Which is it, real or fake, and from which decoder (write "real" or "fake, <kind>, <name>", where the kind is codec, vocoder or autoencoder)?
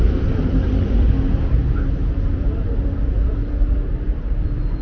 fake, vocoder, BigVGAN v2